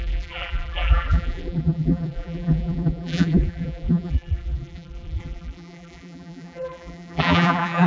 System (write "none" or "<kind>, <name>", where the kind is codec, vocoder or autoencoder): vocoder, BigVGAN v2